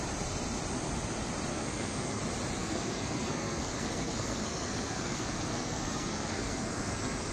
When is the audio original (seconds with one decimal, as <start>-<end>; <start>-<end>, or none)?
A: 0.0-1.5; 2.2-2.6